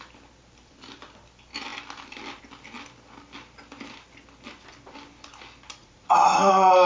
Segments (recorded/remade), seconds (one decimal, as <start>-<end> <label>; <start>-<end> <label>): 0.0-5.8 recorded; 5.8-6.5 remade; 6.5-6.9 recorded